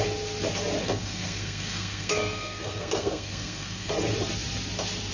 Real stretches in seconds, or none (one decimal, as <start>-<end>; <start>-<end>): 0.0-0.8; 3.9-5.1